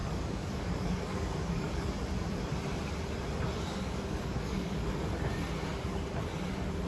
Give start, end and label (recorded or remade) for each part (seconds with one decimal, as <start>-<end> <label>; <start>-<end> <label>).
0.0-1.9 remade; 1.9-3.7 recorded; 3.7-4.9 remade; 4.9-6.9 recorded